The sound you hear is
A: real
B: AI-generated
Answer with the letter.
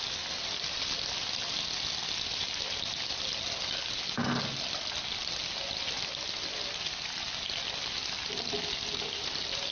A